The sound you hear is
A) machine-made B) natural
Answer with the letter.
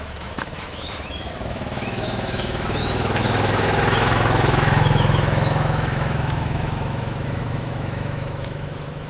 A